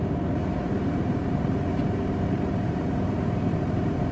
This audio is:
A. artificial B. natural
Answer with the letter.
A